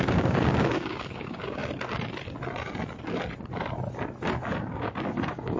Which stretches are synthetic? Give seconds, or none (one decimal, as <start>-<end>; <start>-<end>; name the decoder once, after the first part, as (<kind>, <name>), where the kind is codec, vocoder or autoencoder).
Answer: 0.0-1.6 (codec, DAC); 4.6-5.6